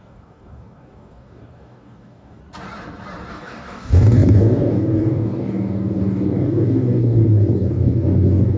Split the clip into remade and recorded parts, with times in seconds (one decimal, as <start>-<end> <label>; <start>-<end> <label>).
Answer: 0.0-2.4 remade; 2.4-3.3 recorded; 3.3-8.6 remade